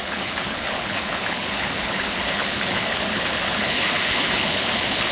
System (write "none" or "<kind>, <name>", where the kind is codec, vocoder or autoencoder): codec, HILCodec